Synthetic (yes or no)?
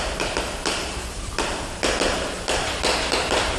no